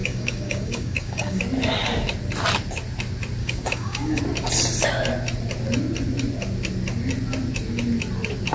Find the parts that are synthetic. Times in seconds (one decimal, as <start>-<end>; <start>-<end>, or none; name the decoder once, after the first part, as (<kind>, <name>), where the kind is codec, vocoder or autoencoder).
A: 0.0-1.4 (codec, DAC); 3.4-4.2